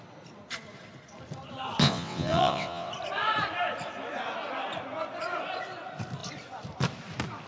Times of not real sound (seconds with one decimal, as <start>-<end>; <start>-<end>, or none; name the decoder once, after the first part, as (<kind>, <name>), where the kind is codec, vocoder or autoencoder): 1.8-2.9 (vocoder, WaveNeXt)